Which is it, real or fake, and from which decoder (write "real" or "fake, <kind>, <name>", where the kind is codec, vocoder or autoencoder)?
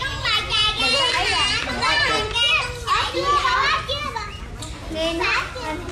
real